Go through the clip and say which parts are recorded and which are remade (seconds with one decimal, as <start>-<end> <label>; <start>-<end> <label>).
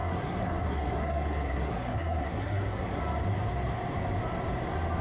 0.0-3.0 remade; 3.0-5.0 recorded